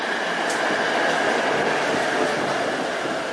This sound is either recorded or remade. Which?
recorded